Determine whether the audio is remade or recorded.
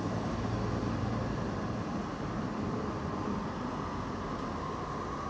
recorded